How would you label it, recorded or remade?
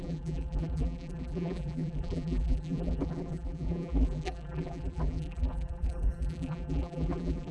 remade